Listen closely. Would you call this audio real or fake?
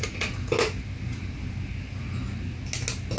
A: real